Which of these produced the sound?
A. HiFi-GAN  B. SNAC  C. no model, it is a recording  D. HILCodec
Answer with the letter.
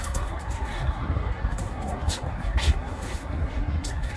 B